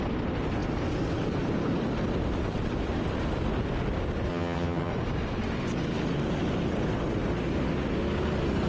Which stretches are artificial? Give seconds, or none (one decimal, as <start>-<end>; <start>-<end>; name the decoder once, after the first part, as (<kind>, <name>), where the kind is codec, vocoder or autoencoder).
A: 4.3-4.9 (vocoder, HiFi-GAN)